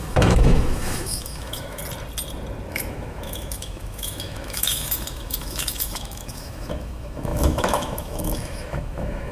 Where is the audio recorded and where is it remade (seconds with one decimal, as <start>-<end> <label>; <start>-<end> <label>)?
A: 0.0-1.8 remade; 1.8-2.7 recorded; 2.7-9.3 remade